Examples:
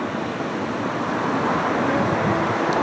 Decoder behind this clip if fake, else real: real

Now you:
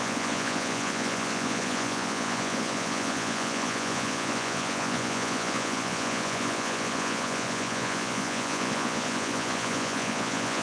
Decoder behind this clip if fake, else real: fake, vocoder, Vocos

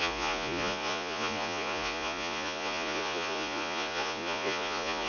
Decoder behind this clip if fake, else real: fake, vocoder, Vocos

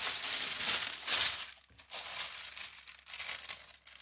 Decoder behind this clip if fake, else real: real